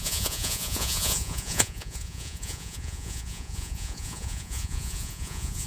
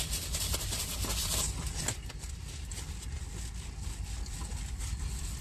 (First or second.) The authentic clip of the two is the second